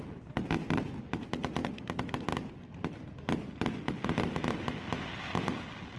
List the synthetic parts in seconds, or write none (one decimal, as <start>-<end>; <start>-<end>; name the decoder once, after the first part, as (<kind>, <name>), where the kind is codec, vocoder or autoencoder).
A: none